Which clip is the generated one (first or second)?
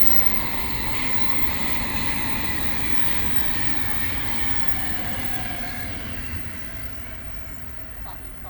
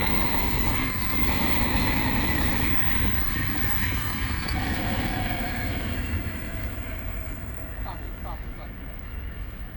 second